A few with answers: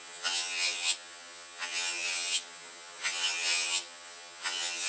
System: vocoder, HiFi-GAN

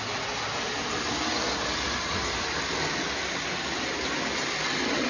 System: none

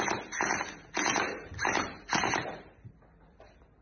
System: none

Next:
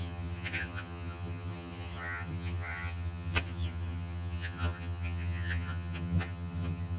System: vocoder, HiFi-GAN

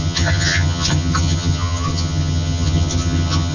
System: vocoder, HiFi-GAN